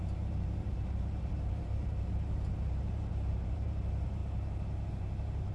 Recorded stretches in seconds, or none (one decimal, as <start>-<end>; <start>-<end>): 4.2-4.9